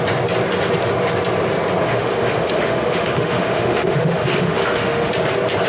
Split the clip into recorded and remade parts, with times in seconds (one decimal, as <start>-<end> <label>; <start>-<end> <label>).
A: 0.0-1.8 recorded; 1.8-5.1 remade; 5.1-5.7 recorded